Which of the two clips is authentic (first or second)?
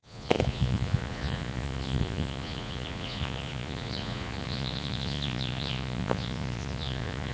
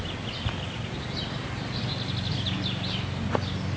second